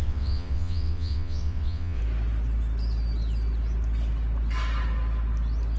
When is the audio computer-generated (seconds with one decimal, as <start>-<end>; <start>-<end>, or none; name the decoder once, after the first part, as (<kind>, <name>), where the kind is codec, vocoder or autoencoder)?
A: 0.0-2.0 (vocoder, WaveNeXt)